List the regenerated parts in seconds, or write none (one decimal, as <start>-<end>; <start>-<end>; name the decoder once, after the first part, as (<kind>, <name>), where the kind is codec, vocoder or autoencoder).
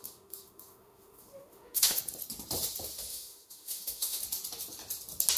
0.0-2.0 (autoencoder, DAC-VAE); 3.1-4.2